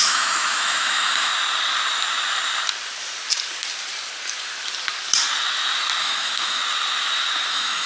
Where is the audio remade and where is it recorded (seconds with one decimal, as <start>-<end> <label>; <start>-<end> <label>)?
0.0-1.3 remade; 1.3-6.0 recorded; 6.0-6.6 remade; 6.6-7.5 recorded; 7.5-7.9 remade